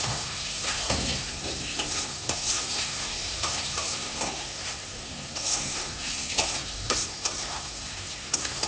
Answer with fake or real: fake